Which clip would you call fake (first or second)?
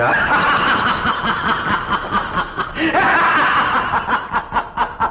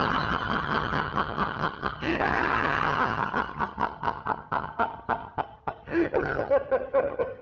second